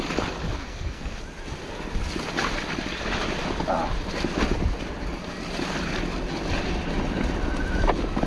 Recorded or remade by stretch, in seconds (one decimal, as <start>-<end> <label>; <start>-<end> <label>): 0.0-0.6 recorded; 0.6-1.2 remade; 1.2-8.3 recorded